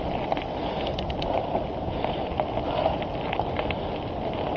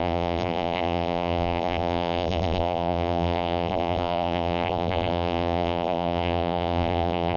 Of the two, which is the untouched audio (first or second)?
first